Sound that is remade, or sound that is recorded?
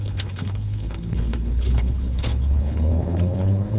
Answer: remade